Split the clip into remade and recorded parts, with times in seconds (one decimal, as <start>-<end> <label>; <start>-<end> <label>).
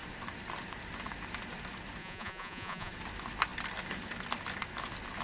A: 0.0-2.0 recorded; 2.0-2.9 remade; 2.9-5.2 recorded